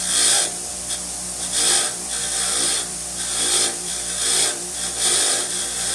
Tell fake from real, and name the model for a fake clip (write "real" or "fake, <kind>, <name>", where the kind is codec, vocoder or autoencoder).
fake, vocoder, BigVGAN v2